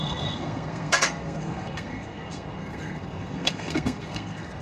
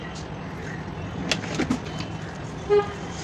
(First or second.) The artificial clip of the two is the first